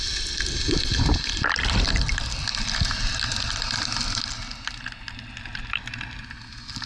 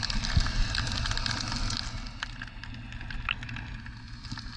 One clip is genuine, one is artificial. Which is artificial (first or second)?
first